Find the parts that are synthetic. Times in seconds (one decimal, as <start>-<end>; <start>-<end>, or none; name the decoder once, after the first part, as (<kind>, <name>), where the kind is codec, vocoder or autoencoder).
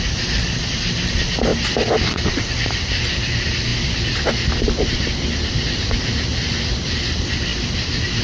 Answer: 0.0-1.5 (vocoder, BigVGAN v2); 2.3-3.7; 4.8-8.2